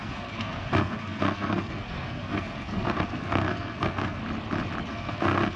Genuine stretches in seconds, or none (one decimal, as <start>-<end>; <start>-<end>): 4.2-4.9